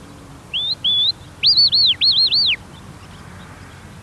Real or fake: real